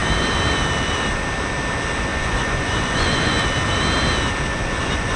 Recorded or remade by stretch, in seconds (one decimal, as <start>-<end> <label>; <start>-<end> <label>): 0.0-2.1 recorded; 2.1-3.4 remade; 3.4-4.5 recorded; 4.5-5.2 remade